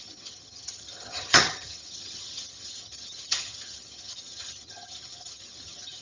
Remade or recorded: remade